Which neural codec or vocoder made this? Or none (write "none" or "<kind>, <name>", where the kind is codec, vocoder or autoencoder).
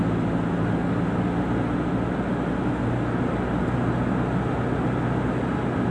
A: none